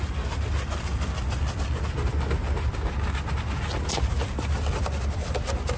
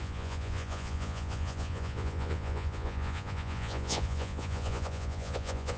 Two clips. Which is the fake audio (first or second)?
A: second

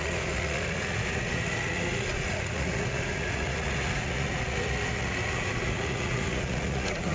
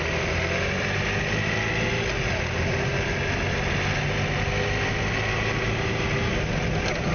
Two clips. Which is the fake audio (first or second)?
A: first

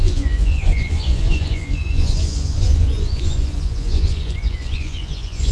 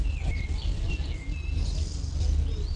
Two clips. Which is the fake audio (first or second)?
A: first